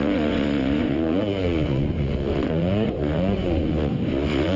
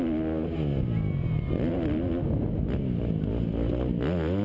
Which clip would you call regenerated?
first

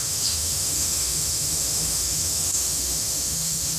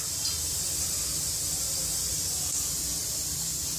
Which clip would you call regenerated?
first